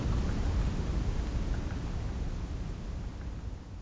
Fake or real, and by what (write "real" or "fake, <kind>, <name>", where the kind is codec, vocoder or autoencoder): real